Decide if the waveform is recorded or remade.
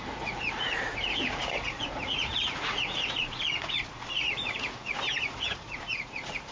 remade